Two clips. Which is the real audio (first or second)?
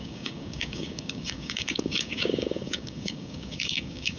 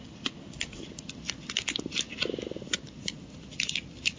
second